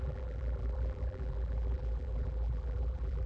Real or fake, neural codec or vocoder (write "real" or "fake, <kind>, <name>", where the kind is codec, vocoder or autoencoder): fake, vocoder, BigVGAN v2